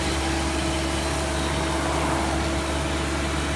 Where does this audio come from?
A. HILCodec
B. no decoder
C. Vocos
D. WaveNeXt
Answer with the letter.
B